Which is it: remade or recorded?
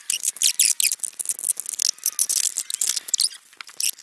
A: recorded